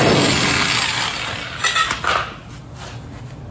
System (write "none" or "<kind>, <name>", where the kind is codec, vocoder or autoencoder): none